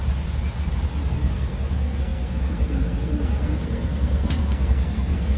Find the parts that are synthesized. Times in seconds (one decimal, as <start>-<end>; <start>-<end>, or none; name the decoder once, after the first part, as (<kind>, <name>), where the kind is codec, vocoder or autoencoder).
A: 1.1-5.4 (codec, SNAC)